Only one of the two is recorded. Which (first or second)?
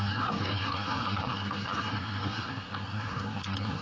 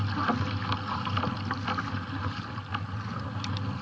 second